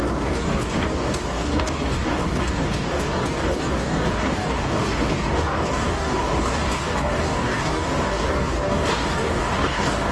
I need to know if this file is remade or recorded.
remade